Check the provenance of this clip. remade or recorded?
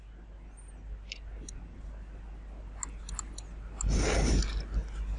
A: recorded